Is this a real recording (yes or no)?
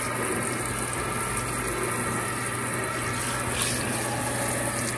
yes